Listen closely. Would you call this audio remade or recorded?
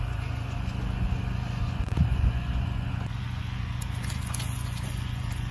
remade